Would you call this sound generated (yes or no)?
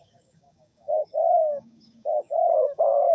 yes